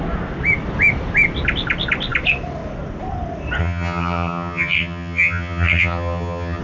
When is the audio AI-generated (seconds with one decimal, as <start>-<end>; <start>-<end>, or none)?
3.6-6.6